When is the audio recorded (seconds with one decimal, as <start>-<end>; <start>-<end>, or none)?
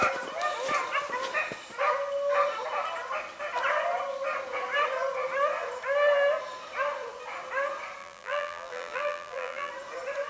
0.0-8.0; 9.7-10.3